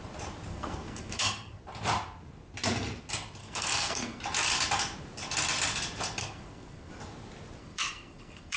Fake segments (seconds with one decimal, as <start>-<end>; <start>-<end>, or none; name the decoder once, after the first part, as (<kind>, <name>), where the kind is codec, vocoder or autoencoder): 0.5-1.6 (codec, SNAC); 3.4-4.2; 6.2-6.9; 7.6-8.6